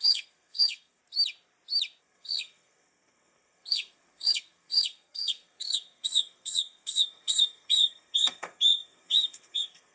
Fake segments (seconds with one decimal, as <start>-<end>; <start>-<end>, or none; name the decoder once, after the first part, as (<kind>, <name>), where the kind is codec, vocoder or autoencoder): 0.0-1.0 (codec, SNAC); 2.0-9.9

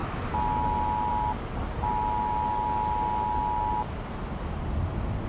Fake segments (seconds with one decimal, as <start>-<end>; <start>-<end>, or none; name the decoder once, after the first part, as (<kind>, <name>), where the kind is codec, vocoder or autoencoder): none

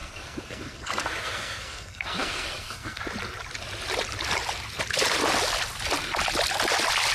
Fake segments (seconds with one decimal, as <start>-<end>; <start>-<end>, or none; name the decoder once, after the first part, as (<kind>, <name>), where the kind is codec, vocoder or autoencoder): 0.0-3.0 (codec, SNAC)

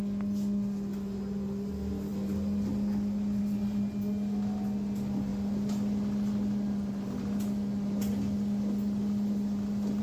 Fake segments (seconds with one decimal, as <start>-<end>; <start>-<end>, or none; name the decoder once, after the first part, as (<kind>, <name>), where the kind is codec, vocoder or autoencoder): none

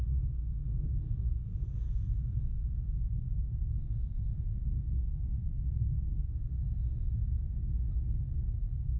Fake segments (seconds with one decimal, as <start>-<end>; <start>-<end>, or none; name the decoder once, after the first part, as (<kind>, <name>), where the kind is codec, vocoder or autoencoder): 0.0-7.4 (codec, SNAC); 8.5-9.0

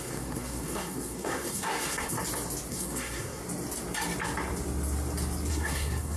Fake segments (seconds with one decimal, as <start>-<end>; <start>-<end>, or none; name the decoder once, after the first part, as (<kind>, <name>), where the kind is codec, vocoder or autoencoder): 0.0-2.2 (codec, SNAC); 2.7-3.4; 5.5-6.2

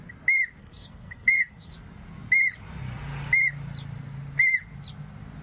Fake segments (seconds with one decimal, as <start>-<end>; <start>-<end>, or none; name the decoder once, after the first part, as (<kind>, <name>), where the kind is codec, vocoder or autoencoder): 0.6-1.7 (codec, SNAC)

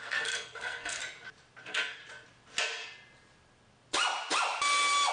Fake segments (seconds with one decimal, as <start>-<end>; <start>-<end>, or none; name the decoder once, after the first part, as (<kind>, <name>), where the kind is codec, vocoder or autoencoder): 0.0-1.0 (codec, SNAC); 1.6-2.0